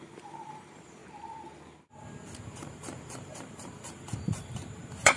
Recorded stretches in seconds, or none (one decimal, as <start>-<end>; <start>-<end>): 1.0-2.4